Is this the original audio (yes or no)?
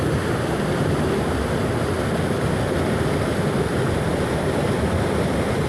yes